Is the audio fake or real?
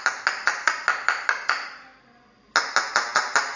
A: real